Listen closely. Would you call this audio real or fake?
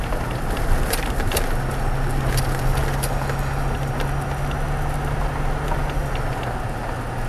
real